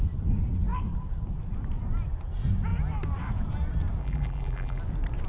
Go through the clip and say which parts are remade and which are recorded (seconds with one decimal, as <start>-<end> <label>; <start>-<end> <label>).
0.0-4.0 recorded; 4.0-4.8 remade; 4.8-5.3 recorded